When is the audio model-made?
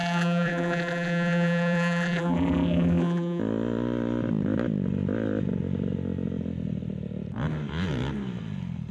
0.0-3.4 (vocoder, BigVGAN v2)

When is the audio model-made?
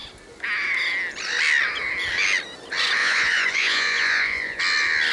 3.0-4.6 (vocoder, Vocos)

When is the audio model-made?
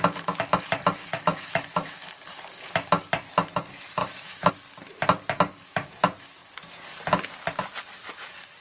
1.0-2.1 (autoencoder, DAC-VAE); 4.0-4.5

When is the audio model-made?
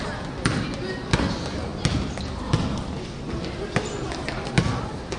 none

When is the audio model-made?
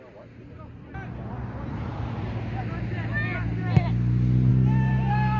none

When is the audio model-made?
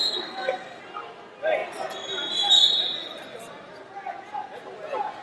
0.0-0.8 (codec, SNAC)